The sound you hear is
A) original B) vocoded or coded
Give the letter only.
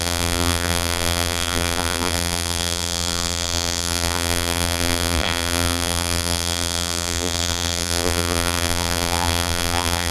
B